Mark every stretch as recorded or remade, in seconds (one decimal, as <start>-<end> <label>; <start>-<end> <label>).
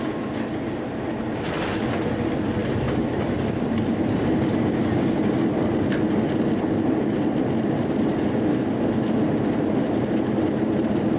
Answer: 0.0-11.2 recorded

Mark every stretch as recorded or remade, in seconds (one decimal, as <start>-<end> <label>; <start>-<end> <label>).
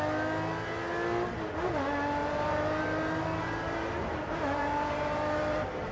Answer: 0.0-2.2 recorded; 2.2-5.9 remade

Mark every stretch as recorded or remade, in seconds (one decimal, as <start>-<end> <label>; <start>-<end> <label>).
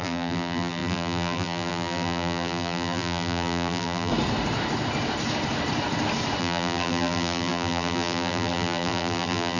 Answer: 0.0-4.1 remade; 4.1-6.4 recorded; 6.4-9.6 remade